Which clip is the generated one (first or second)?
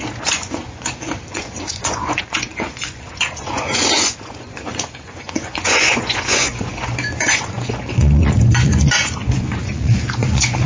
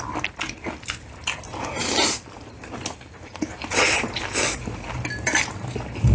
first